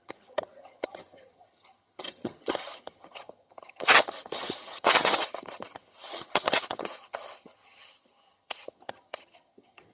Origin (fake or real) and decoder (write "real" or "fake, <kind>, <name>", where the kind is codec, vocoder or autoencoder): fake, vocoder, HiFi-GAN